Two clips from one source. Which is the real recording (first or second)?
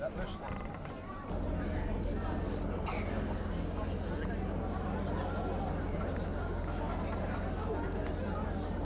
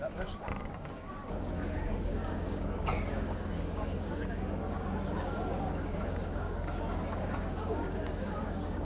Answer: first